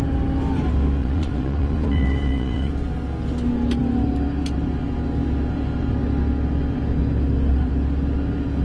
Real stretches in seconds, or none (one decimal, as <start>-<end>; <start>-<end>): 0.0-1.0; 2.7-8.6